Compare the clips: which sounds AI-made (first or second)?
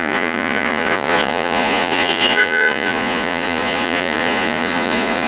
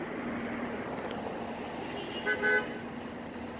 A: first